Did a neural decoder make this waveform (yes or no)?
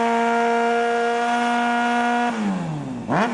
no